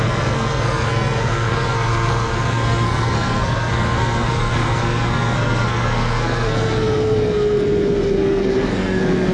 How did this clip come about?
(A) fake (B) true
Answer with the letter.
A